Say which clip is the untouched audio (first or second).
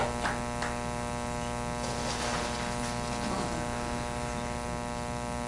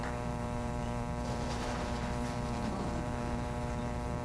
first